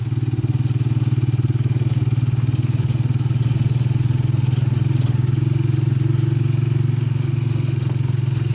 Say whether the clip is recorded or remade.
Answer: recorded